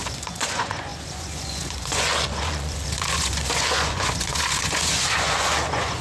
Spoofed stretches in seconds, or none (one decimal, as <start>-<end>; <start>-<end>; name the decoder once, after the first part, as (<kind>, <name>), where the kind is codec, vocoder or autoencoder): 0.0-6.0 (vocoder, Vocos)